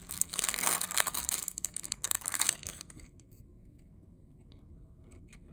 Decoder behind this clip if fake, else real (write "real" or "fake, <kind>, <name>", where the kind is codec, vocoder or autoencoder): fake, codec, SNAC